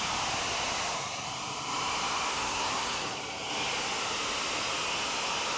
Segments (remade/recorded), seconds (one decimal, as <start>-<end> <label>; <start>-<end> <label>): 0.0-2.3 recorded; 2.3-3.2 remade; 3.2-5.6 recorded